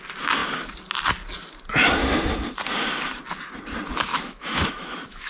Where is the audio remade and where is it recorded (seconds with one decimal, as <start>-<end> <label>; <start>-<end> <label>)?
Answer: 0.0-4.1 recorded; 4.1-5.3 remade